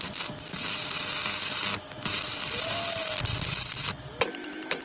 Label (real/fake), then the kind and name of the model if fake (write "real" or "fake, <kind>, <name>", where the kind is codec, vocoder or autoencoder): real